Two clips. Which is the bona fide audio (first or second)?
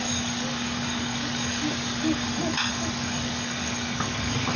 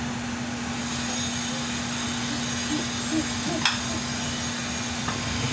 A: second